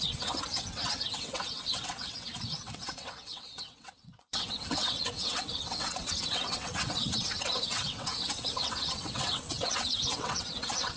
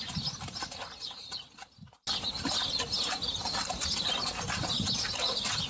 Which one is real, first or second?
second